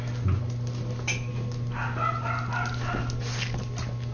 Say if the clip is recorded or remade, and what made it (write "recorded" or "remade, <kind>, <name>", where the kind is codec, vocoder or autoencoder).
recorded